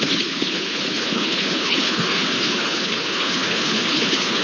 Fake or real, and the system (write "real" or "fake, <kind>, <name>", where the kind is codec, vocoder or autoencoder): fake, codec, HILCodec